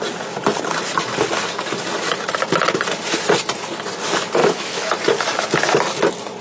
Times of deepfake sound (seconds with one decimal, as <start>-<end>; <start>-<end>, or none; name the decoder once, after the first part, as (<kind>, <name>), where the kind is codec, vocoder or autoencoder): 4.4-4.9 (autoencoder, DAC-VAE)